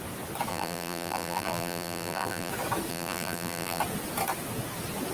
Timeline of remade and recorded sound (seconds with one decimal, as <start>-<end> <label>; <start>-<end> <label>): 0.0-0.5 recorded; 0.5-2.5 remade; 2.5-2.9 recorded; 2.9-3.8 remade; 3.8-5.1 recorded